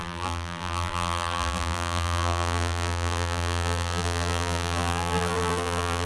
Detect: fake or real fake